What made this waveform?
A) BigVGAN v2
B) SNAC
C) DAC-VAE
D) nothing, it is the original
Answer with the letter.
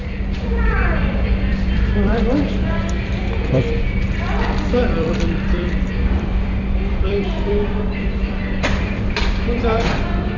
A